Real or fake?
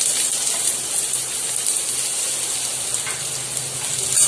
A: real